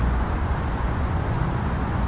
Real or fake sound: fake